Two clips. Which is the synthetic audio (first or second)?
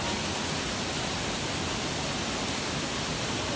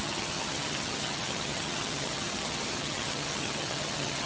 second